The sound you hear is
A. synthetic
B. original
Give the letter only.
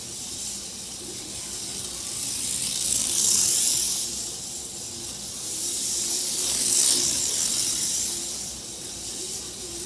A